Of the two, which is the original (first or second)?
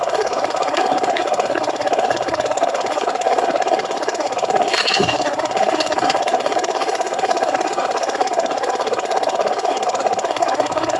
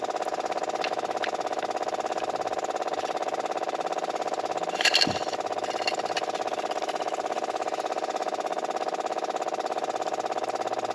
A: second